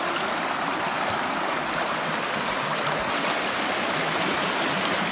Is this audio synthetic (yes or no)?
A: no